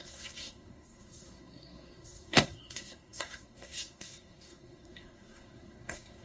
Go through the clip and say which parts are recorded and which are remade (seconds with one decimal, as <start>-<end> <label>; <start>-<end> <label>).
0.0-6.2 remade